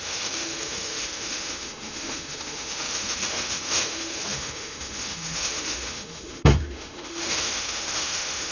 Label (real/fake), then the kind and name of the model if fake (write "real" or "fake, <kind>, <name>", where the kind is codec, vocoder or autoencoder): fake, autoencoder, DAC-VAE